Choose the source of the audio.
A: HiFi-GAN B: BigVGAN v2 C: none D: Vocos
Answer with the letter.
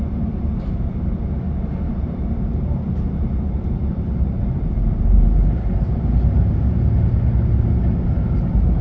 B